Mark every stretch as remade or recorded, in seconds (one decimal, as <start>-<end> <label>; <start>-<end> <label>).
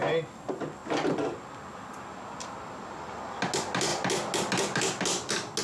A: 0.0-5.6 recorded